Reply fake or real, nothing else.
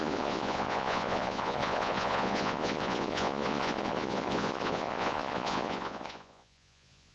fake